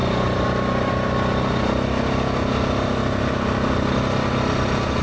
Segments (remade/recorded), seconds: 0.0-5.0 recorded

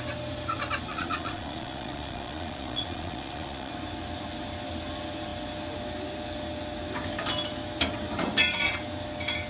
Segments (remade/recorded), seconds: 0.0-0.9 recorded; 0.9-3.7 remade; 3.7-9.5 recorded

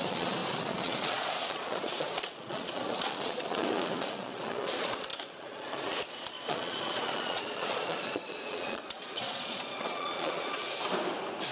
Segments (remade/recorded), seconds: 0.0-10.6 remade; 10.6-11.5 recorded

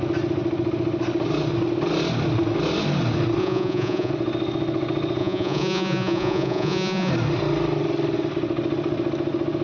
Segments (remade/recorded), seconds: 0.0-3.4 recorded; 3.4-4.1 remade; 4.1-5.2 recorded; 5.2-7.1 remade; 7.1-9.6 recorded

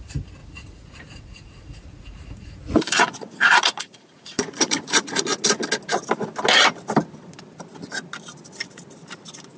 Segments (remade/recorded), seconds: 0.0-0.4 recorded; 0.4-5.2 remade; 5.2-9.6 recorded